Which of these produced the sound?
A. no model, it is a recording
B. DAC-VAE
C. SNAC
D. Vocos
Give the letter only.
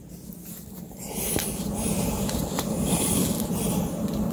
A